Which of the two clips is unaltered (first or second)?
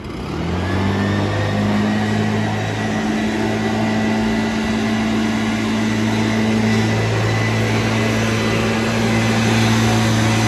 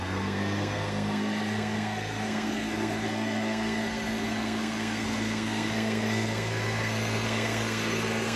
first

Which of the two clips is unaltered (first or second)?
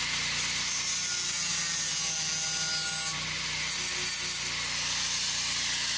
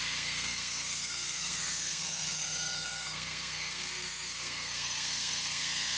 first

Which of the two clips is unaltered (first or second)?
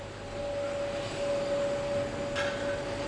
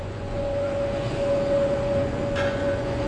first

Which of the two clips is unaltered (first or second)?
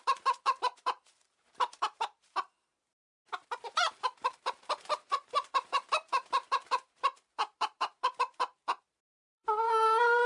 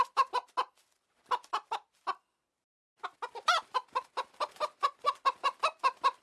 second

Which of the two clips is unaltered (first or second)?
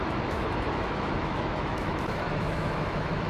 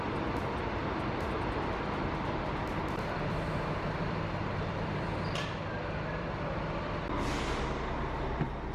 second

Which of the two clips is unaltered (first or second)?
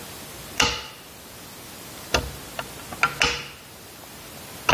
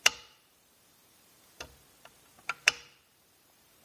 first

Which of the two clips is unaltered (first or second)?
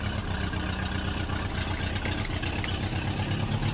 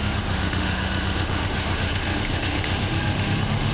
first